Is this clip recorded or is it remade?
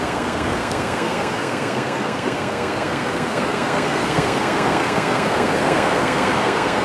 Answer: remade